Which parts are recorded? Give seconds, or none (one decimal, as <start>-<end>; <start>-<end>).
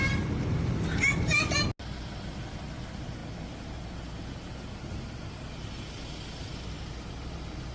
0.0-7.7